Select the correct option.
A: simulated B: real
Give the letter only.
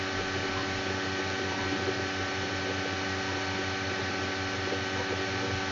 B